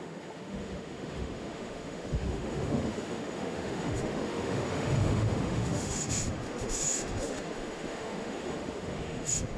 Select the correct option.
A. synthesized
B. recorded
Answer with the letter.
A